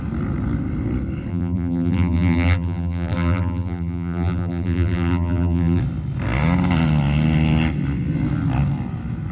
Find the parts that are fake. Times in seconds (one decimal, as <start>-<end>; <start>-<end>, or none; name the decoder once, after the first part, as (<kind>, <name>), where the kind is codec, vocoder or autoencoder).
1.3-5.8 (vocoder, BigVGAN v2)